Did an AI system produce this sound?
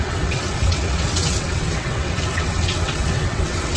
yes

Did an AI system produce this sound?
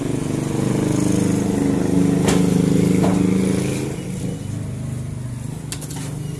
no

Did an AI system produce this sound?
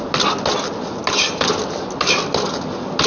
no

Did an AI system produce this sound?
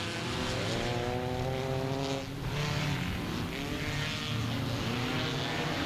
no